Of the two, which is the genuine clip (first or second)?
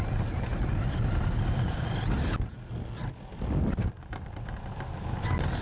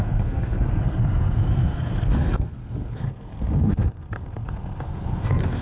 first